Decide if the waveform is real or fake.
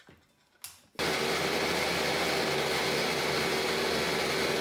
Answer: real